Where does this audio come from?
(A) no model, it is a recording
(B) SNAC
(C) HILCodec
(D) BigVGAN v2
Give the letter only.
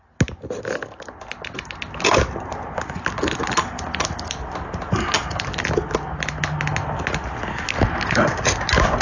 A